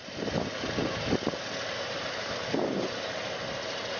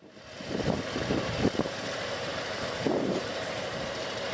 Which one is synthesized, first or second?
second